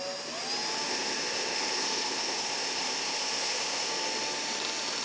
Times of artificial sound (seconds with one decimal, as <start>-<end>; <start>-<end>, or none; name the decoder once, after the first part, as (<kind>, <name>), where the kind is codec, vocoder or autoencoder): 0.9-3.9 (codec, ZipCodec)